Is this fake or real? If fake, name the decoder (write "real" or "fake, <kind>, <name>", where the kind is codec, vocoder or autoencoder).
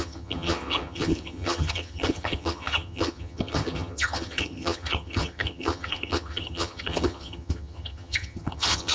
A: fake, vocoder, HiFi-GAN